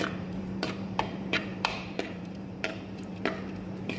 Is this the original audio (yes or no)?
no